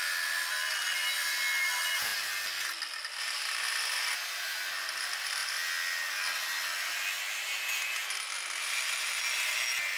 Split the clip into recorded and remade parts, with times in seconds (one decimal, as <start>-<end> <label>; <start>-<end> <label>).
0.0-10.0 recorded